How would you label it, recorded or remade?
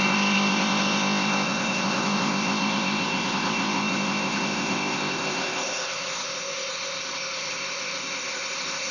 remade